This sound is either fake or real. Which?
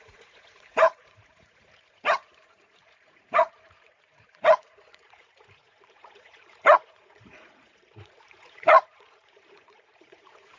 fake